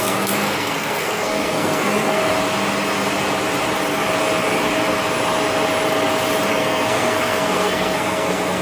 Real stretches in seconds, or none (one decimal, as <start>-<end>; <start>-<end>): 2.3-6.5